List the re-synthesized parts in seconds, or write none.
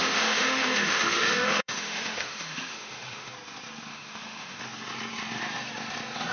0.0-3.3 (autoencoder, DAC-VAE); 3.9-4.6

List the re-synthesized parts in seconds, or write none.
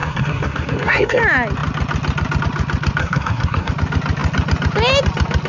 0.0-1.2 (codec, SNAC); 3.0-3.7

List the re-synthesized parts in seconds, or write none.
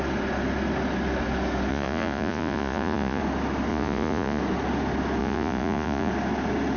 1.7-3.2 (vocoder, Vocos); 3.7-4.4; 5.2-6.1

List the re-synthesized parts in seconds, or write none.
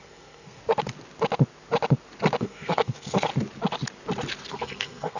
0.0-0.6 (codec, SNAC); 2.4-3.3; 4.5-5.2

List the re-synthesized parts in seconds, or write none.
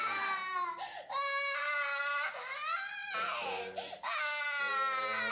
none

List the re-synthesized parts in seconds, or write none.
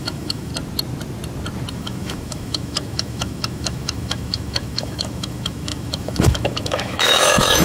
0.0-0.5 (autoencoder, DAC-VAE); 1.7-7.6